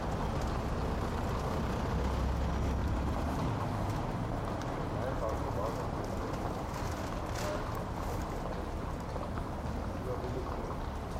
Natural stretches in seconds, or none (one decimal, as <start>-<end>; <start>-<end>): 0.0-2.8; 3.9-11.2